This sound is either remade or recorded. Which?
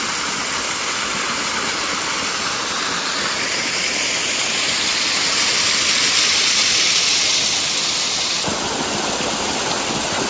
recorded